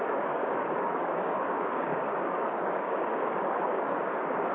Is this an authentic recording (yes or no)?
no